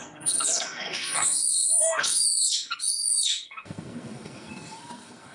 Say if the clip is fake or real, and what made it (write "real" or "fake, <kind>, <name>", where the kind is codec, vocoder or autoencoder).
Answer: fake, codec, SNAC